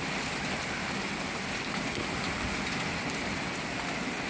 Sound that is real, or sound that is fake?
real